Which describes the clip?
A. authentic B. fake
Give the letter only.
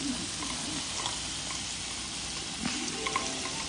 A